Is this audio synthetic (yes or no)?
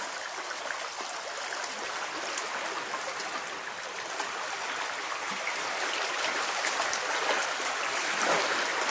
no